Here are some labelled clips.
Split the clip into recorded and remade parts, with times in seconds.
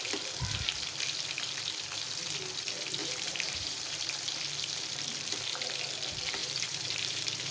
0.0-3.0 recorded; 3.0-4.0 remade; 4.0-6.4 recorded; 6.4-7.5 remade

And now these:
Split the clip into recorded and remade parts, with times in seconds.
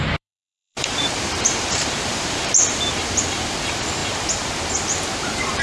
0.0-5.6 remade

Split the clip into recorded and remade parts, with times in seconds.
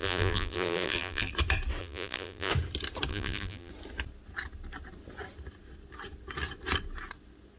0.0-1.3 remade; 1.3-1.8 recorded; 1.8-2.5 remade; 2.5-3.1 recorded; 3.1-3.7 remade; 3.7-7.6 recorded